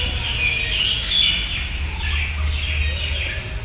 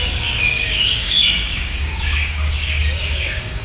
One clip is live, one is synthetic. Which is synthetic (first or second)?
second